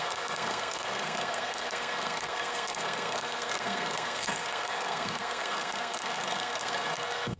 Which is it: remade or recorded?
remade